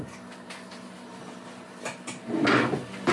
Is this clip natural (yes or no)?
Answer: yes